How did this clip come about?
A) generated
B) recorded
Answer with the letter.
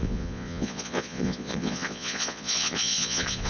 A